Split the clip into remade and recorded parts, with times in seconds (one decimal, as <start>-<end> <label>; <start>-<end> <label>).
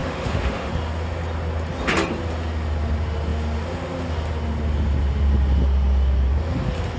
0.0-0.7 remade; 0.7-7.0 recorded